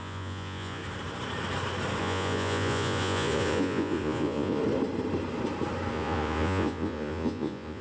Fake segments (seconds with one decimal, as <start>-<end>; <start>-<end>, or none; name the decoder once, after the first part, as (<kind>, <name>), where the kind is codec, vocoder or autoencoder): 0.0-0.8 (vocoder, Vocos); 2.0-4.6; 5.9-7.8